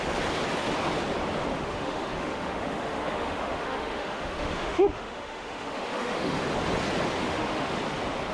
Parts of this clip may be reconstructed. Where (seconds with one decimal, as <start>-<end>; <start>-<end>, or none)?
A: 1.5-6.4; 7.2-7.8